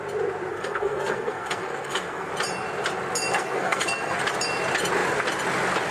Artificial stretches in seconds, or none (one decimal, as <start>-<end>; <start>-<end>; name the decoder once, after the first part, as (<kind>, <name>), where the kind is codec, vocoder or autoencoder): 0.5-2.3 (codec, SNAC); 3.3-4.2